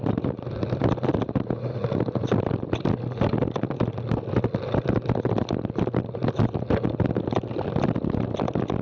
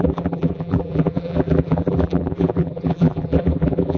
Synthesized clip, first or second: second